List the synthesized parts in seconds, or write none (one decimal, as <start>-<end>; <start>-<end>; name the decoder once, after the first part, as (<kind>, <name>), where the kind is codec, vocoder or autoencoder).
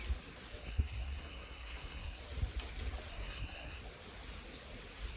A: 0.6-2.2 (codec, SNAC); 3.1-3.8